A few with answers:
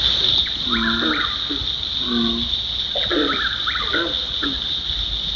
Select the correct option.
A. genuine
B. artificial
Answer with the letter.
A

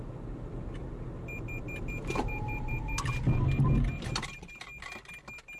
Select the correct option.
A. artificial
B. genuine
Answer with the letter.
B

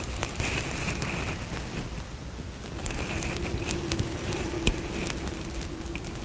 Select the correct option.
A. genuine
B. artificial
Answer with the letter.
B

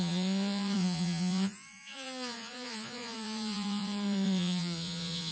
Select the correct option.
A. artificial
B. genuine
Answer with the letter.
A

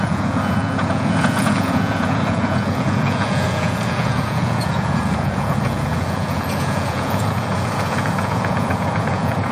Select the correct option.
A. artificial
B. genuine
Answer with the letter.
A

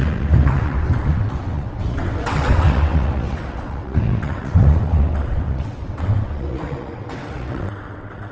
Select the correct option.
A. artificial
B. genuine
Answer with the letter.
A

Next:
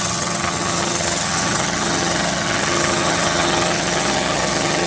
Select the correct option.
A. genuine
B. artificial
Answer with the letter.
B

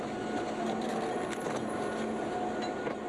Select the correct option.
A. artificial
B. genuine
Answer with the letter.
B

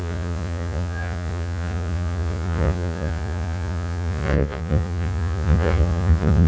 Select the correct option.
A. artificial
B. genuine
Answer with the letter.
A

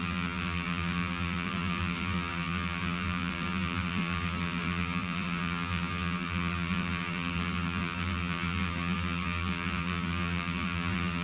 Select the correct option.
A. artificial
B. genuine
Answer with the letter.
A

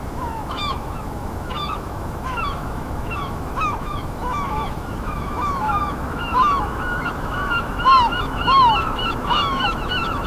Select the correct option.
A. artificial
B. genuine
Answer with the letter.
A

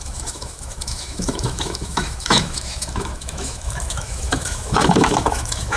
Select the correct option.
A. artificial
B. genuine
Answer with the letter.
A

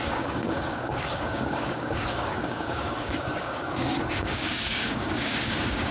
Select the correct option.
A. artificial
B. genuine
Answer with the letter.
A